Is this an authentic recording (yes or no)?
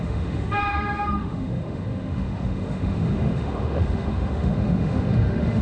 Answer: no